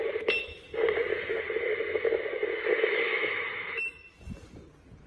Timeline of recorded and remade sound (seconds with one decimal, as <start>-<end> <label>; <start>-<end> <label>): 0.0-1.1 recorded; 1.1-4.2 remade; 4.2-5.1 recorded